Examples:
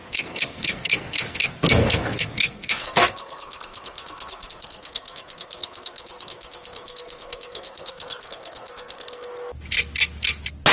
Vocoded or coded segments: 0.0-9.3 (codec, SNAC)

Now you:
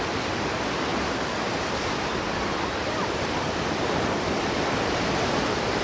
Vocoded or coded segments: none

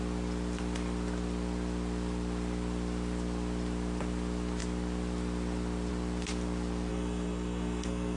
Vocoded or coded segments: 6.9-8.2 (codec, SNAC)

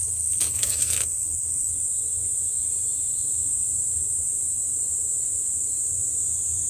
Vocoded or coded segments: 0.0-1.7 (codec, SNAC)

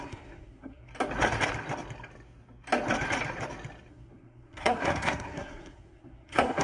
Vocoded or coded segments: 0.0-0.9 (codec, SNAC); 3.9-6.6

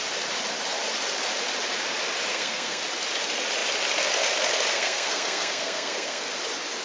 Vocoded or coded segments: 2.3-2.8 (codec, SNAC); 4.7-6.3